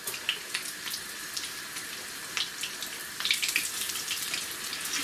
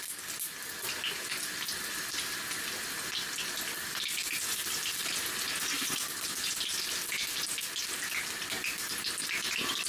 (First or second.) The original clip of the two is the second